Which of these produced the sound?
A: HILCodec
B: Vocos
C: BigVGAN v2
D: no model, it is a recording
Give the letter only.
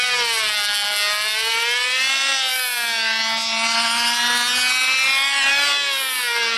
D